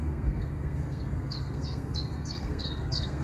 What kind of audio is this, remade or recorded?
remade